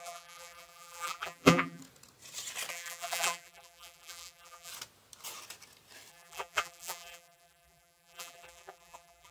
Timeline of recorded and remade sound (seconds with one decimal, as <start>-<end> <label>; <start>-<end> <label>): 0.0-1.8 remade; 1.8-2.7 recorded; 2.7-4.7 remade; 4.7-6.1 recorded; 6.1-9.3 remade